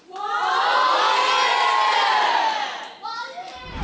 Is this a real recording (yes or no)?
yes